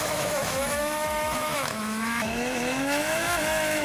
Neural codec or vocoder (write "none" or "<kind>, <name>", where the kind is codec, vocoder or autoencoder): autoencoder, DAC-VAE